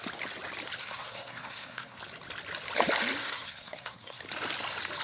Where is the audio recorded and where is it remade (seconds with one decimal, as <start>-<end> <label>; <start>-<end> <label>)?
0.0-0.8 recorded; 0.8-2.0 remade; 2.0-3.2 recorded; 3.2-4.2 remade; 4.2-5.0 recorded